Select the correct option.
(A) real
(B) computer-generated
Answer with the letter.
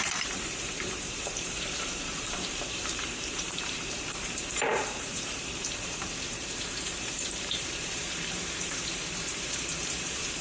B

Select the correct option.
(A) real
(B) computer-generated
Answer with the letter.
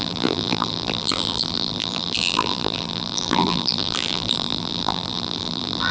B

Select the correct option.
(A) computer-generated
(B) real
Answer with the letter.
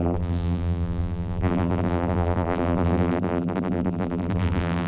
A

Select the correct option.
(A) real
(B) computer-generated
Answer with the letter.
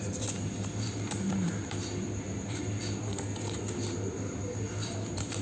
B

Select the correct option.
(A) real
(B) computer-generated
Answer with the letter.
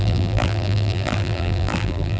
B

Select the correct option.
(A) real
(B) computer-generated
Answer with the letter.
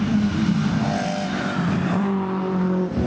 B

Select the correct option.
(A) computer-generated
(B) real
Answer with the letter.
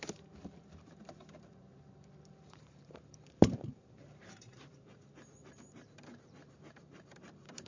A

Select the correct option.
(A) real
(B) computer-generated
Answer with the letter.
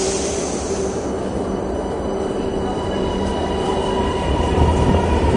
B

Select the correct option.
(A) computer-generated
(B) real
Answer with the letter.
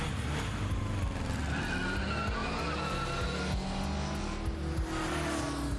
B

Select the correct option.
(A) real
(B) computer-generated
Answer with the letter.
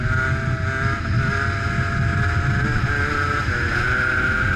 A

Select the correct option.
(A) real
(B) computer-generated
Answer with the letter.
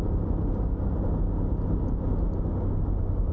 A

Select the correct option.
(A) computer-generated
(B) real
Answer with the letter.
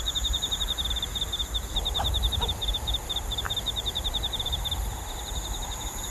A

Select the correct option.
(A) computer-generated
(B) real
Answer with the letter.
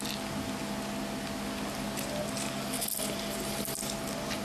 B